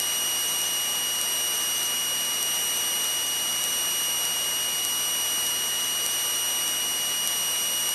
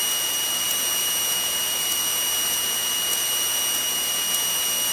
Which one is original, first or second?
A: first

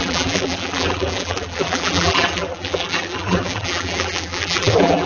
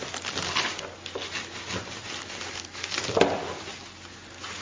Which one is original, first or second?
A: second